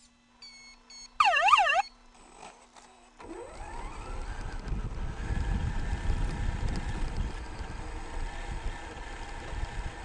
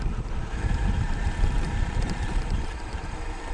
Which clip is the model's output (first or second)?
second